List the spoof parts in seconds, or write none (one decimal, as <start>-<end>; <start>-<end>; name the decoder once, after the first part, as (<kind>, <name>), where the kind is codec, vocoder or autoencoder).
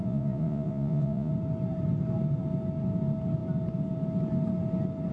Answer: 0.0-1.3 (vocoder, Vocos)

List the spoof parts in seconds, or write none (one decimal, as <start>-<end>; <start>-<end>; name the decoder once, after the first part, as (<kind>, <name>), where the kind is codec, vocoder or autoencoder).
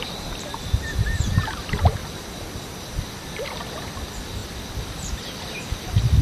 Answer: 0.0-2.0 (vocoder, BigVGAN v2); 2.9-6.2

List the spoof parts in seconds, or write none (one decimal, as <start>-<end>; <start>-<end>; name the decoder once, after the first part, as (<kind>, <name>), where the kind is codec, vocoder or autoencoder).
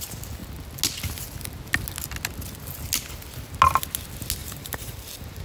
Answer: 4.4-5.4 (vocoder, BigVGAN v2)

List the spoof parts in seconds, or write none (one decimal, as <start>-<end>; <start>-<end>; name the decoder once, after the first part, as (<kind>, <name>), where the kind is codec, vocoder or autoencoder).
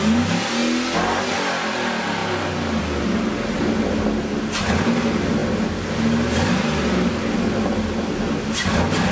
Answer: none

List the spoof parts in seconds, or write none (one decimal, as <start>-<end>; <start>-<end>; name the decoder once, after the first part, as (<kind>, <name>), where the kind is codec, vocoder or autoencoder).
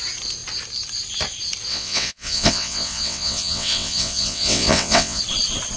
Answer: 1.7-5.2 (vocoder, WaveNeXt)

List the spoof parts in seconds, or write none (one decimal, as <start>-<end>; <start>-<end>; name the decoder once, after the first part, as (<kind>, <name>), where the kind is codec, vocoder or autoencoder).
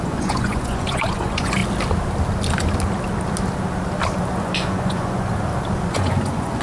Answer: 0.0-1.6 (vocoder, Vocos); 4.4-5.3; 5.9-6.6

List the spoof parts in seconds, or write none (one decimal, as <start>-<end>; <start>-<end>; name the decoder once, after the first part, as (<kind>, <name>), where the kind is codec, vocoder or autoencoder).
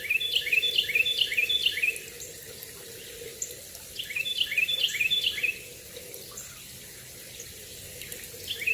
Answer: none